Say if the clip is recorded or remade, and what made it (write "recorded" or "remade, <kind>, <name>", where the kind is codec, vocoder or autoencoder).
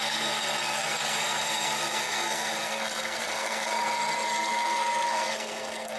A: remade, codec, SNAC